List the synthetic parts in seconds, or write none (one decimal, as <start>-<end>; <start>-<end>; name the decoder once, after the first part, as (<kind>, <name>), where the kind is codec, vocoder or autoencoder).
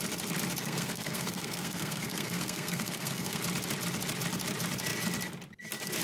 0.6-3.4 (codec, SNAC)